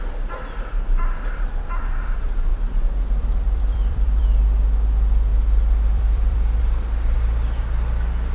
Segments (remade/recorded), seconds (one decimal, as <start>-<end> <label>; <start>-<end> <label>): 0.0-2.5 recorded; 2.5-4.2 remade; 4.2-5.3 recorded; 5.3-6.6 remade; 6.6-8.3 recorded